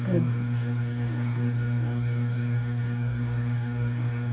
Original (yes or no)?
no